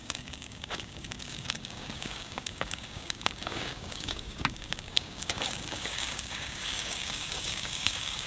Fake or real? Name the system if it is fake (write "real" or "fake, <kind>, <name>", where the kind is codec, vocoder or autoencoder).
fake, codec, DAC